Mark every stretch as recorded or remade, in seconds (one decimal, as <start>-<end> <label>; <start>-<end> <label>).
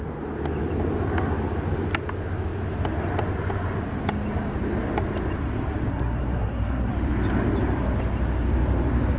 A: 0.0-5.9 recorded; 5.9-6.9 remade; 6.9-9.2 recorded